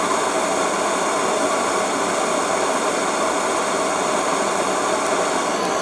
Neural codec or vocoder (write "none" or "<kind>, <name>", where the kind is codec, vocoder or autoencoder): none